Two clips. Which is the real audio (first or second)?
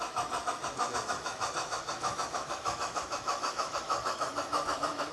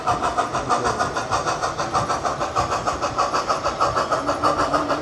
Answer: second